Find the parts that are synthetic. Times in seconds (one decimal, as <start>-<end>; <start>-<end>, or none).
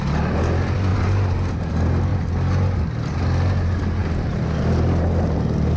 none